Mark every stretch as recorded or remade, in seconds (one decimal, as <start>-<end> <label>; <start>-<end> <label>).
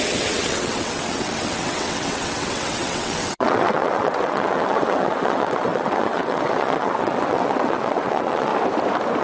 0.0-8.5 remade; 8.5-9.2 recorded